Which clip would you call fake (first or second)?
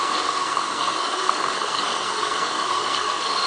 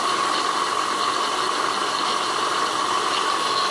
first